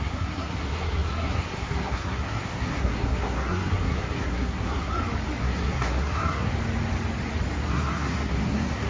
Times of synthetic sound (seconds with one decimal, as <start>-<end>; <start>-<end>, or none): 0.0-4.9; 5.4-6.5; 7.7-8.9